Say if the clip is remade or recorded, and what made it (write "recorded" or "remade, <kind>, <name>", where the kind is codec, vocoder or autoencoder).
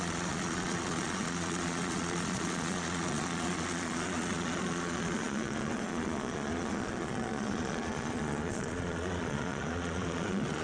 remade, vocoder, Vocos